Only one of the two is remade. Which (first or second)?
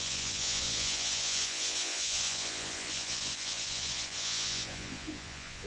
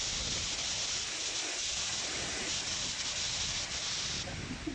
first